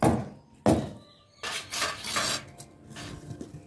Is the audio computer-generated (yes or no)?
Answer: no